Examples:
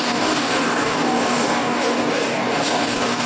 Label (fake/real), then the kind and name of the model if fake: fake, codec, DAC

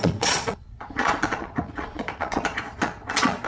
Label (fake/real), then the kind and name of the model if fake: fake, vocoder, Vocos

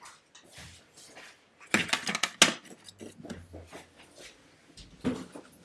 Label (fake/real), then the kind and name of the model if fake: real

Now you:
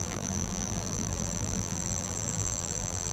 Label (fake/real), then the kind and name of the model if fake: fake, vocoder, BigVGAN v2